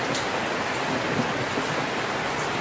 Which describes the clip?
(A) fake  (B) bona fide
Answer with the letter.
B